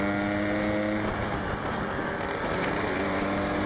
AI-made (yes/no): no